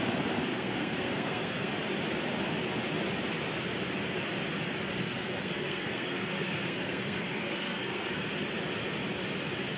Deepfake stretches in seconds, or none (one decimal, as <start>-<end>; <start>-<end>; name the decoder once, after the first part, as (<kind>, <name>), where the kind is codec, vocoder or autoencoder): 0.5-1.7 (codec, SNAC); 5.0-8.3